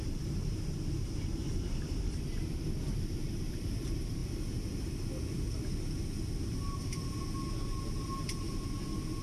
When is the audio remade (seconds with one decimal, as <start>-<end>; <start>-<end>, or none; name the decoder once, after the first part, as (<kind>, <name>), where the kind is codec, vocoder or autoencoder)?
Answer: 0.0-4.2 (vocoder, BigVGAN v2); 6.3-7.1